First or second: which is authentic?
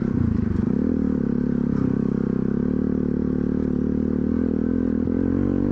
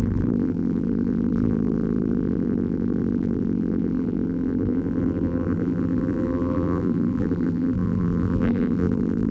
first